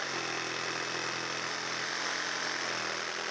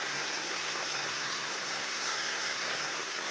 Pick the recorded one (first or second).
first